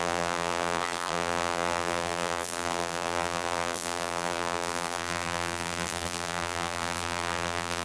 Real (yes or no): no